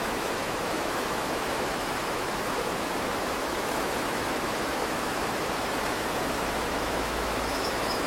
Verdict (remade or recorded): remade